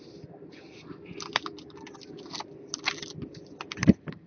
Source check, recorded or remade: recorded